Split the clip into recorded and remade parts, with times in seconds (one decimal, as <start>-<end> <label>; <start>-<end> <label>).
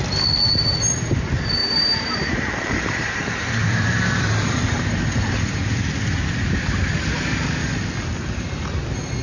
0.0-1.6 recorded; 1.6-5.8 remade; 5.8-7.6 recorded; 7.6-8.4 remade; 8.4-9.2 recorded